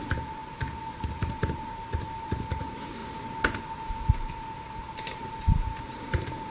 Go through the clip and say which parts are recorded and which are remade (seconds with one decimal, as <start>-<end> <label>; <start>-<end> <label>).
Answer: 0.0-3.0 remade; 3.0-4.1 recorded; 4.1-6.5 remade